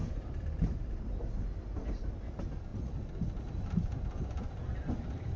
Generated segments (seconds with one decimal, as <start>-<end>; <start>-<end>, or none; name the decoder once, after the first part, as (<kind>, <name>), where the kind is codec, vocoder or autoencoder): 0.0-1.3 (vocoder, BigVGAN v2); 4.6-5.4